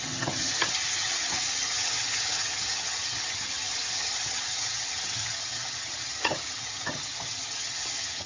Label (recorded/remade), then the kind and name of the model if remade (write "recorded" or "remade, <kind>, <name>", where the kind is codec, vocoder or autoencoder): remade, vocoder, HiFi-GAN